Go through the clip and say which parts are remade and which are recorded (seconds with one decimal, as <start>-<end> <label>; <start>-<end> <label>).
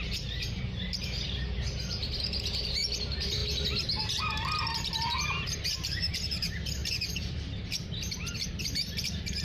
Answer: 0.0-3.4 remade; 3.4-4.0 recorded; 4.0-9.4 remade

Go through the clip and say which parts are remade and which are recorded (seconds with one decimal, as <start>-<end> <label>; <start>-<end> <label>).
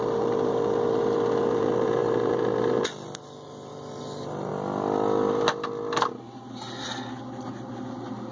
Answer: 0.0-4.5 remade; 4.5-7.7 recorded; 7.7-8.3 remade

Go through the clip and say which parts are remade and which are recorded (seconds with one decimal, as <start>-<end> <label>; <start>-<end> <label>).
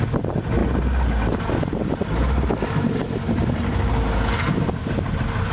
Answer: 0.0-5.5 recorded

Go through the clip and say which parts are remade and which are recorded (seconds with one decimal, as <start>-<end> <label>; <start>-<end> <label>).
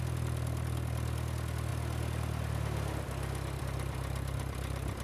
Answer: 0.0-5.0 recorded